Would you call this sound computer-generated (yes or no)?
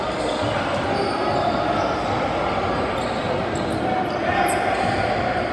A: no